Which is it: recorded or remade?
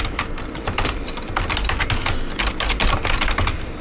recorded